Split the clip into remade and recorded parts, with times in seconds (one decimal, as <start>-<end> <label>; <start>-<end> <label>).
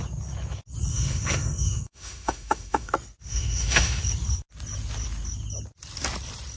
0.0-0.9 recorded; 0.9-2.9 remade; 2.9-3.3 recorded; 3.3-4.0 remade; 4.0-6.6 recorded